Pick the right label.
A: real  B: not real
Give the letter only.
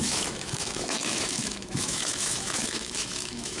B